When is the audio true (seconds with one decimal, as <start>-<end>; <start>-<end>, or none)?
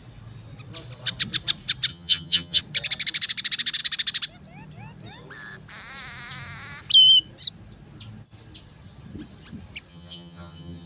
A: 0.0-1.9; 2.6-9.9